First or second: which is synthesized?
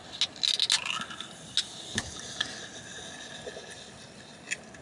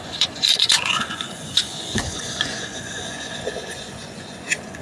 second